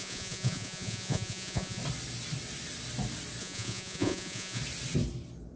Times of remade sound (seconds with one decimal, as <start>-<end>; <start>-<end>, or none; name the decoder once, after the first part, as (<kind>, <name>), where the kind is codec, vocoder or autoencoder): 0.0-1.8 (vocoder, Vocos); 3.4-4.6